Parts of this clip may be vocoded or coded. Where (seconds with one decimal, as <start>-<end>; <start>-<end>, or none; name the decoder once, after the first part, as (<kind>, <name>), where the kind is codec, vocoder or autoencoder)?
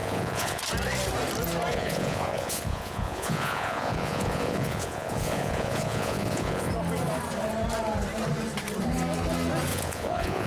0.0-0.6 (vocoder, Vocos); 1.7-6.7; 9.7-10.5